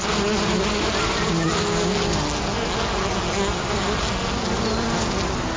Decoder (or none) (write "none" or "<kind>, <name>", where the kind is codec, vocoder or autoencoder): none